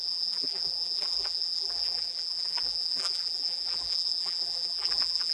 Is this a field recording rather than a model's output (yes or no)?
no